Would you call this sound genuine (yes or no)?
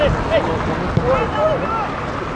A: yes